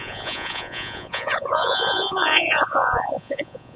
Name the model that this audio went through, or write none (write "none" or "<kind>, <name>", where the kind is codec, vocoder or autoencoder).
vocoder, Vocos